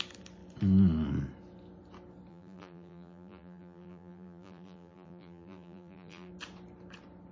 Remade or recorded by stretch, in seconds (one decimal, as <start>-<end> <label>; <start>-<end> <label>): 0.0-2.3 recorded; 2.3-6.3 remade; 6.3-7.3 recorded